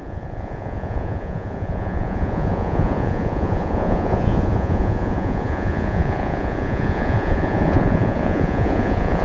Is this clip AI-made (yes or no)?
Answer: yes